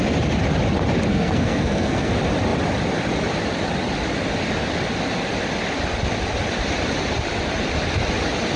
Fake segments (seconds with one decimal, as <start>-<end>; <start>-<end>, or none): 1.1-2.1